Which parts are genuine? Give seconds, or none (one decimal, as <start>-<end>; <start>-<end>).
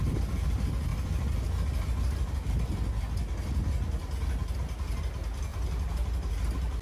0.0-5.5; 6.3-6.8